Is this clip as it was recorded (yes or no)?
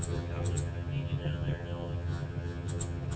no